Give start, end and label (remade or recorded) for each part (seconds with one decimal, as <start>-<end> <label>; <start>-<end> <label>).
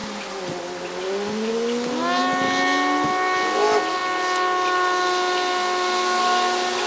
0.0-6.9 recorded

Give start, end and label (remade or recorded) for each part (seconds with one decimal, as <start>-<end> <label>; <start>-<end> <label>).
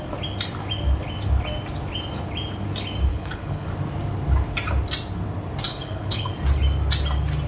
0.0-3.1 recorded; 3.1-3.7 remade; 3.7-5.7 recorded; 5.7-6.3 remade; 6.3-7.5 recorded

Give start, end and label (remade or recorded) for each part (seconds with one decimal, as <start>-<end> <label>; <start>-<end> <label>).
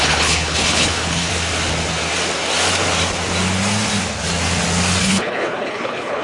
0.0-1.3 remade; 1.3-5.0 recorded; 5.0-6.2 remade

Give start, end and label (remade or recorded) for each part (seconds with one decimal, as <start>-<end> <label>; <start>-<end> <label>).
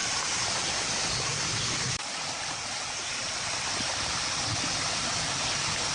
0.0-5.9 recorded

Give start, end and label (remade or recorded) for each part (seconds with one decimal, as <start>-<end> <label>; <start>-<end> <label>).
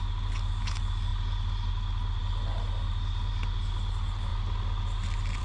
0.0-5.4 recorded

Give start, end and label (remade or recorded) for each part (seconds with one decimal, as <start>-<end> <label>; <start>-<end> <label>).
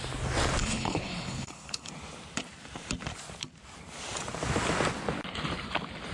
0.0-0.6 recorded; 0.6-1.9 remade; 1.9-6.1 recorded